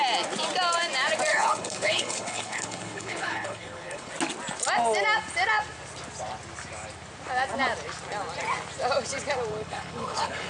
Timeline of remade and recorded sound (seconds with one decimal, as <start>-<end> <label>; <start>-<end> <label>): 0.0-1.3 recorded; 1.3-4.1 remade; 4.1-9.5 recorded; 9.5-10.5 remade

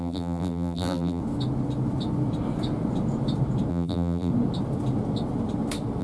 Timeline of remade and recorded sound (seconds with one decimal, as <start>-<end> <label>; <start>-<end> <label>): 0.0-1.2 remade; 1.2-3.7 recorded; 3.7-4.3 remade; 4.3-6.0 recorded

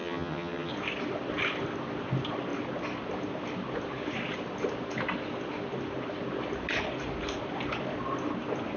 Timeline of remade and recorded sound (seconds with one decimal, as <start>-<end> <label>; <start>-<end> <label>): 0.0-0.7 remade; 0.7-8.8 recorded

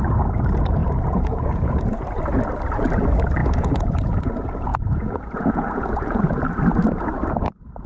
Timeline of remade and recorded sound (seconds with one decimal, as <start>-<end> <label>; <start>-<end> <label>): 0.0-0.8 recorded; 0.8-2.2 remade; 2.2-3.4 recorded; 3.4-4.3 remade; 4.3-4.7 recorded; 4.7-6.2 remade; 6.2-7.9 recorded

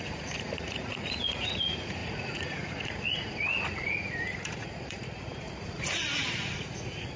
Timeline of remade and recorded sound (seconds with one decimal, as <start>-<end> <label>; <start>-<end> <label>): 0.0-7.2 remade

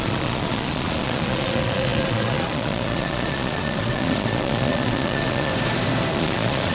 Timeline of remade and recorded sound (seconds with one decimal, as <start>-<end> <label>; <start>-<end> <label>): 0.0-5.5 remade; 5.5-6.1 recorded; 6.1-6.7 remade